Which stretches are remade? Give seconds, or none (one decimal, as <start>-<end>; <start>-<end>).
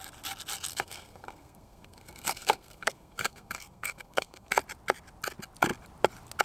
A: 0.7-4.5